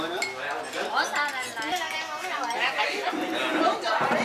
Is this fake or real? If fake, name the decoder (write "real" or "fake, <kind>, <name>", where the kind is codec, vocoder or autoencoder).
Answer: real